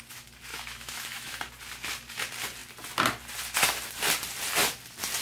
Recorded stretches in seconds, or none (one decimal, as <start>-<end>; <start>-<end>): 0.0-0.5; 1.4-5.2